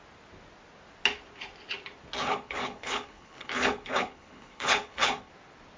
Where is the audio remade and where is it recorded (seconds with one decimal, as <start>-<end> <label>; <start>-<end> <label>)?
0.0-2.2 recorded; 2.2-5.3 remade; 5.3-5.8 recorded